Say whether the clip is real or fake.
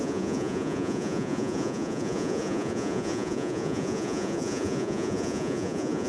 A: fake